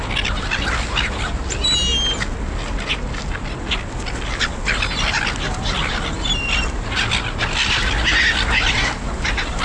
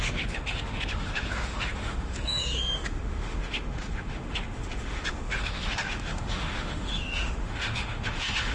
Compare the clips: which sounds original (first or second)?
first